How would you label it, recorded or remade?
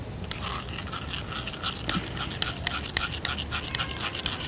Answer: recorded